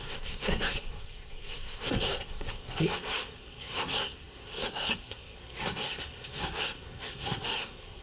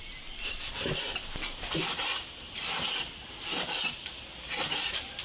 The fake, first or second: first